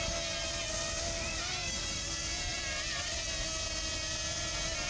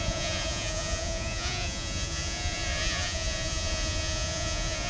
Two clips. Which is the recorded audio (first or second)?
first